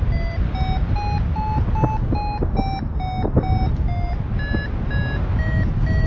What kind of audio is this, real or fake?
real